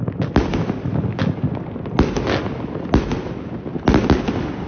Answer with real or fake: real